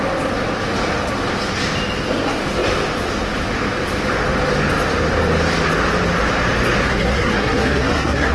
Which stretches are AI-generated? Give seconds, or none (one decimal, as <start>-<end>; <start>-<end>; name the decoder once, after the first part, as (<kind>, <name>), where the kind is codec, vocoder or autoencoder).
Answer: 6.8-8.3 (codec, SNAC)